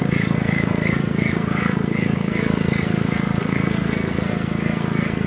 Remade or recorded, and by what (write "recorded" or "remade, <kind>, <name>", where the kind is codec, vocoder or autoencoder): remade, codec, SNAC